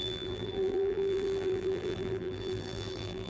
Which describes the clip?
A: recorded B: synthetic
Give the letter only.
B